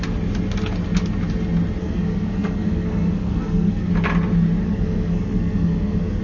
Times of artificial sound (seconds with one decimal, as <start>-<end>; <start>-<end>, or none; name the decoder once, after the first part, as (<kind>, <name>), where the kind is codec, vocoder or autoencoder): 1.8-3.9 (codec, SNAC); 4.6-6.2